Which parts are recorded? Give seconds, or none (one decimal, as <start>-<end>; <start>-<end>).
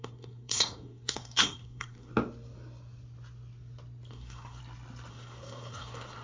2.1-4.1; 4.6-5.1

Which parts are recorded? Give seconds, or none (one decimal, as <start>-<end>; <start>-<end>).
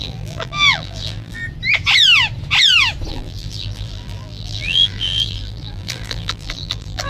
1.4-3.1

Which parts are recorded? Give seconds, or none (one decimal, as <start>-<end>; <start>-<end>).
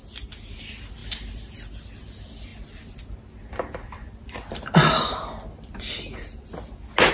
0.0-1.0; 1.5-7.1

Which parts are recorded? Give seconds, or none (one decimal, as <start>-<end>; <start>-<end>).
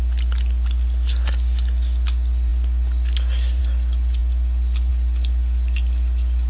0.0-6.5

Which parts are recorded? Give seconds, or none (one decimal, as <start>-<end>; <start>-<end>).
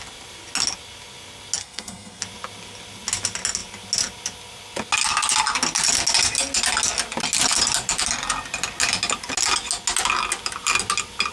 0.0-1.6; 2.2-11.3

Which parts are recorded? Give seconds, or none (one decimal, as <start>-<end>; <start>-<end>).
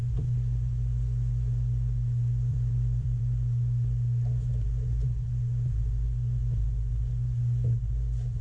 0.0-2.5; 3.2-8.4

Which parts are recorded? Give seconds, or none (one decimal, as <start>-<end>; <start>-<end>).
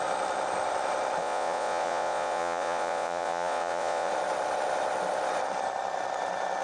0.0-1.2; 4.1-6.6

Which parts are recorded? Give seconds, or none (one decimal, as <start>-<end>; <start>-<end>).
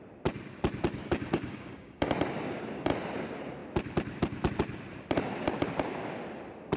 0.0-1.0; 2.1-6.8